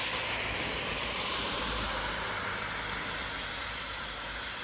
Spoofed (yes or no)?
yes